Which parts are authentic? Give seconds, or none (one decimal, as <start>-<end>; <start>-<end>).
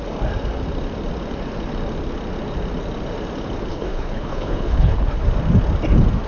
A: 0.0-3.7; 5.2-6.3